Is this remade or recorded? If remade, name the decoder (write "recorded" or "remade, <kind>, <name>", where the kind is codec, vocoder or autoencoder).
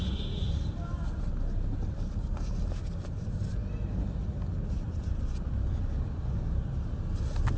recorded